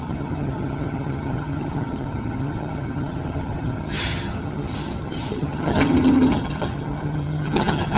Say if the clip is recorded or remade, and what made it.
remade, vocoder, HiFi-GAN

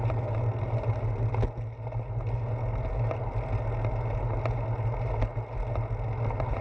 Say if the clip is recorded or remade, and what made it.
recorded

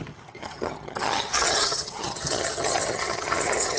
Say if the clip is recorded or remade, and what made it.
remade, vocoder, HiFi-GAN